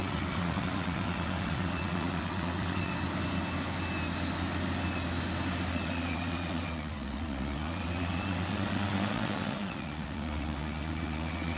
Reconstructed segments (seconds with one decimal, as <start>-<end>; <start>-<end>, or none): 0.0-2.9; 5.7-11.6